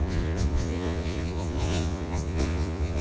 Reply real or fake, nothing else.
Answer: fake